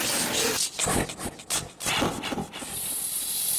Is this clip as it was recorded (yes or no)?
yes